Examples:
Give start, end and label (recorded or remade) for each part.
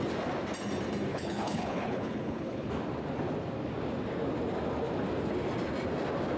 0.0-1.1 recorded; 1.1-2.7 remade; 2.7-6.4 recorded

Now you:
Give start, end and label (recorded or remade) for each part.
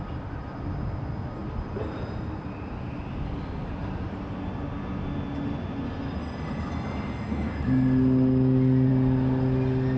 0.0-10.0 recorded